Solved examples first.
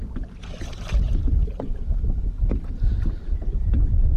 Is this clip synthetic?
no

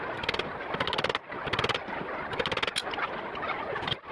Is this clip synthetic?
no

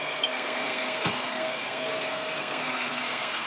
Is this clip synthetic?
yes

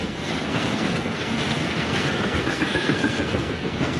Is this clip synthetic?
yes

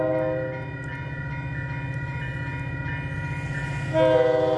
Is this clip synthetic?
no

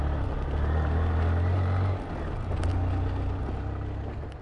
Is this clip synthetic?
no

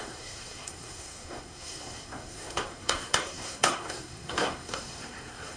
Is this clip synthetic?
yes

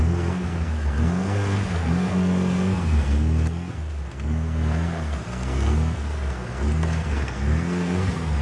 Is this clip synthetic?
yes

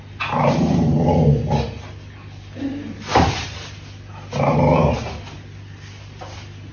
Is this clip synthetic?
no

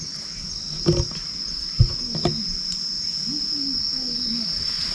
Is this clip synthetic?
no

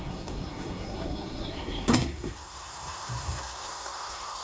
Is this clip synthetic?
yes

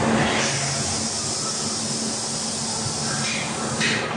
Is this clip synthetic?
no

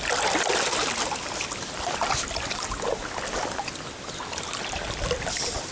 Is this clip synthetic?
no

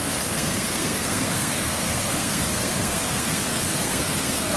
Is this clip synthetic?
yes